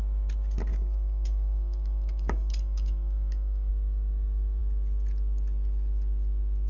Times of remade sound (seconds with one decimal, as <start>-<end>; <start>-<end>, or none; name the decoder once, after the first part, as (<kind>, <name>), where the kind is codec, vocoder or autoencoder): 0.7-3.7 (codec, DAC)